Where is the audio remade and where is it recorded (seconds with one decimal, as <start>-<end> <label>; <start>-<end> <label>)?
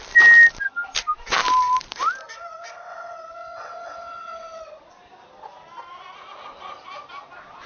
0.0-2.9 recorded; 2.9-4.6 remade; 4.6-7.7 recorded